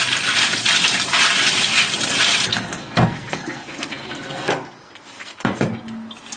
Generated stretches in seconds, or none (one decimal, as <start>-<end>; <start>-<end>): 2.5-5.7